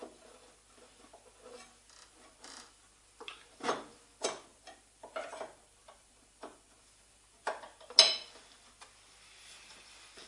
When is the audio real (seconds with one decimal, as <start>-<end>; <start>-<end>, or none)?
0.0-3.3; 4.0-10.3